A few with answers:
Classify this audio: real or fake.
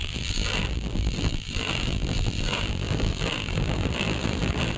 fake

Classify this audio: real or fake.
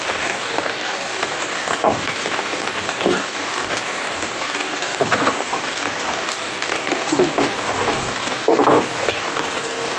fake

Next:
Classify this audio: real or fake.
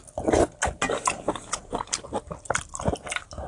real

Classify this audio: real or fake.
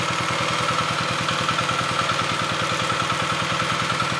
real